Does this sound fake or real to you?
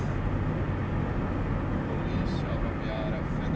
real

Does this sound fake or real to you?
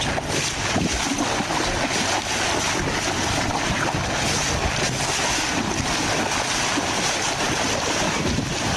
real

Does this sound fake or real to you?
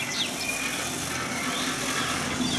real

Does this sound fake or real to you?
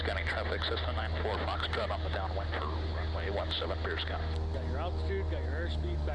real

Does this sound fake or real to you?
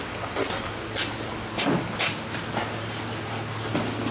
real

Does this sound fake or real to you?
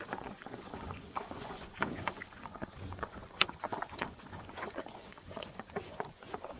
fake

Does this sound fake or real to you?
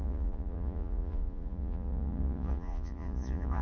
fake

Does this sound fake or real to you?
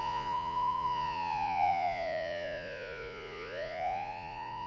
fake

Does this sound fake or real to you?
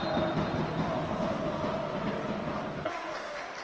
real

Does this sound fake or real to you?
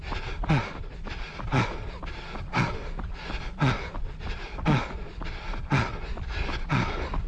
real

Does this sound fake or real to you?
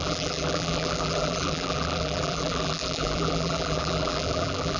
fake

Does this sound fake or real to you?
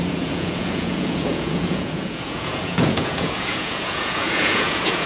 fake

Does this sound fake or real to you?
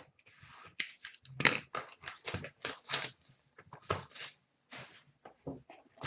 real